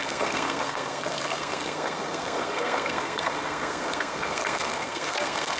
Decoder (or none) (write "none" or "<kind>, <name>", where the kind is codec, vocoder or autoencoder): codec, SNAC